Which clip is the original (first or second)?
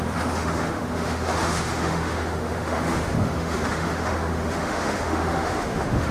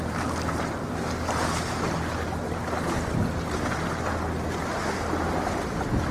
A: second